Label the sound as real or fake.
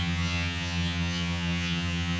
fake